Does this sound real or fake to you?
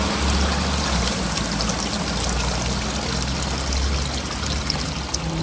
real